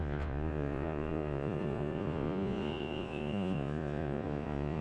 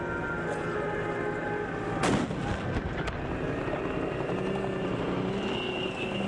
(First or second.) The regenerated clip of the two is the first